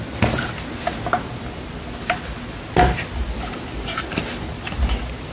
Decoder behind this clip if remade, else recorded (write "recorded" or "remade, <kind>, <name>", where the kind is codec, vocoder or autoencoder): recorded